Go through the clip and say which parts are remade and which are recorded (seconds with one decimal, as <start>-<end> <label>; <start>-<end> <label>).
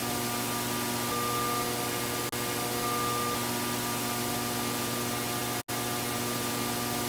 0.0-7.1 recorded